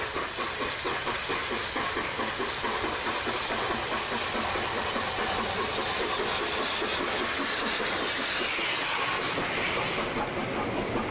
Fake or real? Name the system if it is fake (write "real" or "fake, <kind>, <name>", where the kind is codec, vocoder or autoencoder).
real